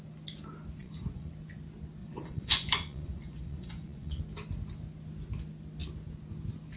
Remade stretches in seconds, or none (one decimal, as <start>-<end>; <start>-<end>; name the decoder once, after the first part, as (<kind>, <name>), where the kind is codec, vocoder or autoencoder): 0.8-1.3 (vocoder, Vocos); 2.0-4.2